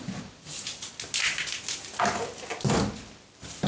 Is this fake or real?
real